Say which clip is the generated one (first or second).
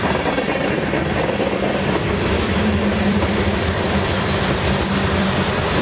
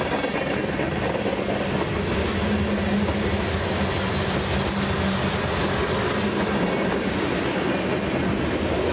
first